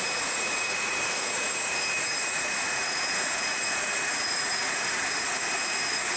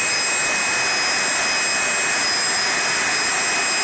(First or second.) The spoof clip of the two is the first